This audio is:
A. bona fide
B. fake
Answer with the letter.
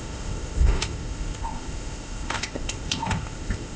B